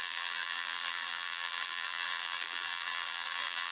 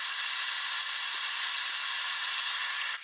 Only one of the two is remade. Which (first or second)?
first